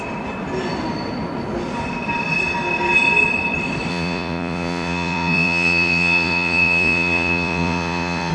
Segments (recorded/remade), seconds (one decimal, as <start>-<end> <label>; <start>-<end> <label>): 0.0-3.9 recorded; 3.9-8.3 remade